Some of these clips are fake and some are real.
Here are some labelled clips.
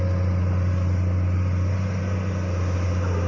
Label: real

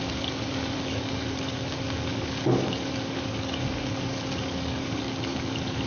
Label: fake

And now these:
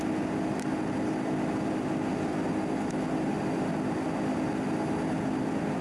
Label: real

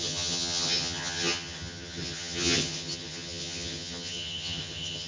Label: fake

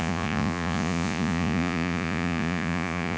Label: fake